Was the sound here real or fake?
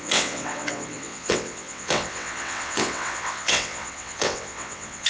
fake